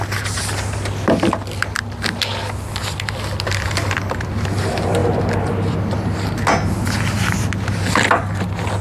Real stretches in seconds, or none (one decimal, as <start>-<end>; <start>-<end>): 0.0-8.8